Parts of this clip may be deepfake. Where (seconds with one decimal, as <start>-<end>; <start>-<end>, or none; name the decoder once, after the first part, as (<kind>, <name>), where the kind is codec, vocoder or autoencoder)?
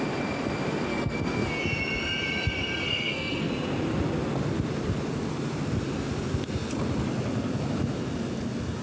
0.9-1.6 (codec, SNAC); 2.9-3.5